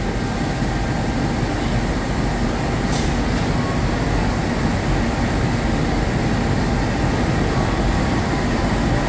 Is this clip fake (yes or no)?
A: no